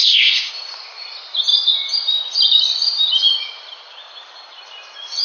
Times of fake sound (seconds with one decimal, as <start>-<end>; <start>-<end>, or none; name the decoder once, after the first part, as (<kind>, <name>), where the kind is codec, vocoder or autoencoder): 0.0-0.5 (codec, ZipCodec)